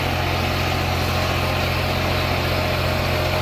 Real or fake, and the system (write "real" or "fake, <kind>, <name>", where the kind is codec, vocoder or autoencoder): real